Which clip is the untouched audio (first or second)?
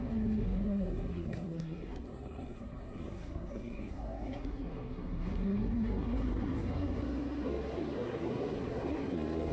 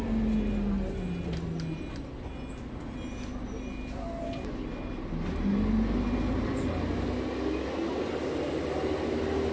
second